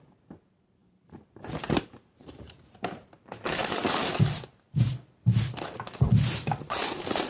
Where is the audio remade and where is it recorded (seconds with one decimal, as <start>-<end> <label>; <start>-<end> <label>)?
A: 0.0-3.6 remade; 3.6-6.7 recorded; 6.7-7.3 remade